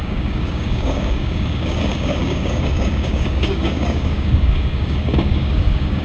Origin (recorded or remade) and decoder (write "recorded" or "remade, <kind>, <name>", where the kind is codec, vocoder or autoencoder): remade, codec, DAC